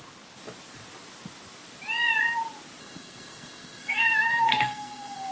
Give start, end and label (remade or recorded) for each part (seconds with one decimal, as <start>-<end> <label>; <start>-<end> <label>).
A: 0.0-2.8 recorded; 2.8-5.3 remade